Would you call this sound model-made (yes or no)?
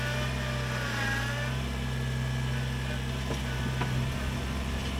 no